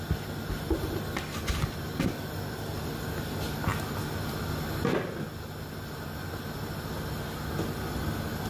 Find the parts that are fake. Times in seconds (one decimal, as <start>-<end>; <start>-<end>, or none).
none